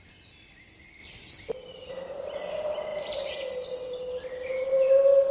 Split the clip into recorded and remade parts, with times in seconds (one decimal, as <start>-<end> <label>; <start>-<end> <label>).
0.0-1.0 recorded; 1.0-1.5 remade; 1.5-2.9 recorded; 2.9-3.4 remade; 3.4-5.3 recorded